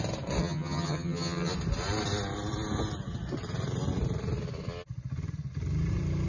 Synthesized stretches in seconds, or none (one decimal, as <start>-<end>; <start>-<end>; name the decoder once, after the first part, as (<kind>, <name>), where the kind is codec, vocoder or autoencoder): 0.4-1.5 (vocoder, HiFi-GAN)